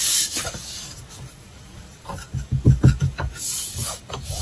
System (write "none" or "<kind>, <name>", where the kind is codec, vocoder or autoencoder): codec, DAC